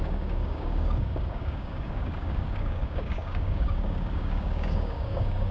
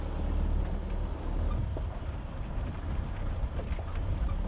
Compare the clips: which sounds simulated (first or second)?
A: first